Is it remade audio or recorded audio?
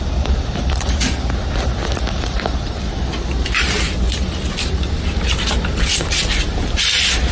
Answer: remade